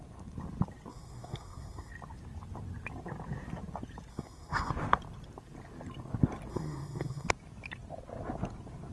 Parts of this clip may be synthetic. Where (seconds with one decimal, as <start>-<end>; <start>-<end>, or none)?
0.9-1.9; 4.1-4.7; 6.5-7.3